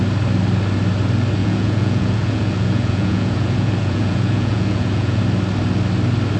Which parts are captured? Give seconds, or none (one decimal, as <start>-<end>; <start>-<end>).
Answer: 0.0-1.4; 5.2-6.4